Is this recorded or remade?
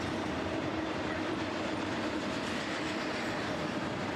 remade